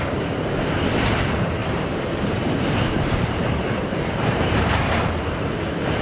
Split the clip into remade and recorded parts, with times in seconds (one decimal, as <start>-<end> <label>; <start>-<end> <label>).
0.0-1.6 recorded; 1.6-5.2 remade; 5.2-6.0 recorded